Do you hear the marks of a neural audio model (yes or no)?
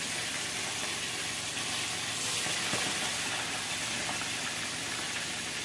no